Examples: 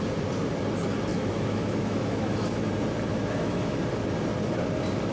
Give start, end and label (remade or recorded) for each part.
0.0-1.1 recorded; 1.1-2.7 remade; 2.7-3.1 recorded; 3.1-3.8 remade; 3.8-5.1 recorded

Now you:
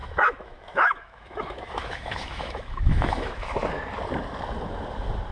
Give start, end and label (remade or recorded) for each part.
0.0-3.6 remade; 3.6-5.3 recorded